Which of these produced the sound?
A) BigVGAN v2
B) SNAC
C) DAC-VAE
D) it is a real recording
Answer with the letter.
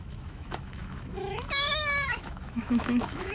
C